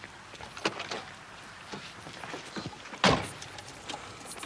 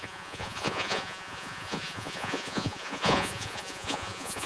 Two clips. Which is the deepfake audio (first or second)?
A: second